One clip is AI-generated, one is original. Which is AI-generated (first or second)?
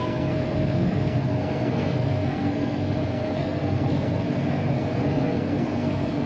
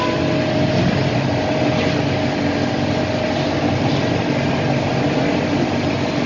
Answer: first